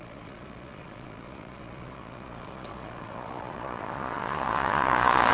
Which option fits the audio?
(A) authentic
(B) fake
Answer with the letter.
B